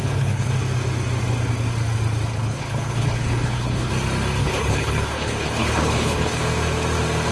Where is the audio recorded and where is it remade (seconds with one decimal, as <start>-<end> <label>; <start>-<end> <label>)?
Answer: 0.0-0.5 remade; 0.5-2.3 recorded; 2.3-3.9 remade; 3.9-4.4 recorded; 4.4-6.4 remade; 6.4-7.3 recorded